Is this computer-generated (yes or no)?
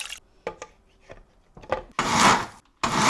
no